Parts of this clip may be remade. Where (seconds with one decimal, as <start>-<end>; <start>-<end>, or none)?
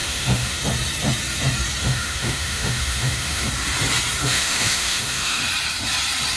0.0-0.6; 1.8-3.5; 4.2-5.4